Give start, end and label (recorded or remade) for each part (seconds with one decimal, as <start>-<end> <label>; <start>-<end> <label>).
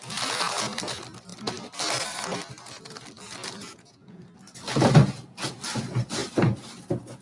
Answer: 0.0-3.6 recorded; 3.6-4.2 remade; 4.2-7.2 recorded